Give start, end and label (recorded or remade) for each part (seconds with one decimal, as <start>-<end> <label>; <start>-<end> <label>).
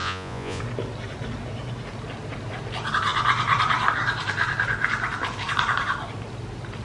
0.0-0.6 remade; 0.6-6.8 recorded